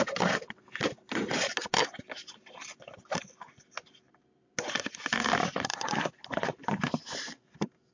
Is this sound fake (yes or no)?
no